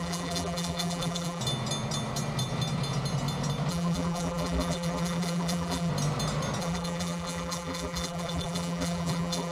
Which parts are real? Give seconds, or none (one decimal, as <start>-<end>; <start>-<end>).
1.4-3.7; 5.9-6.6